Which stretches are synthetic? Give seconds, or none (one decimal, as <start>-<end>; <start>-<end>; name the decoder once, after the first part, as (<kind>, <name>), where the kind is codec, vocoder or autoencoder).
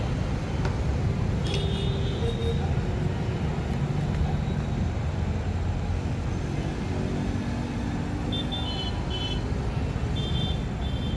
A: none